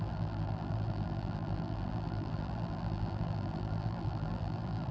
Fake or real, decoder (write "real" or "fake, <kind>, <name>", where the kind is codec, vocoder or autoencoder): fake, vocoder, BigVGAN v2